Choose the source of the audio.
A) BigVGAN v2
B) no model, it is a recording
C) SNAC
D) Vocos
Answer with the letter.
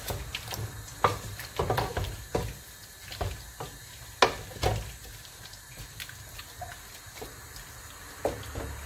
B